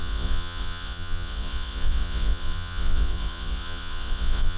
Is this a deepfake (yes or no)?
yes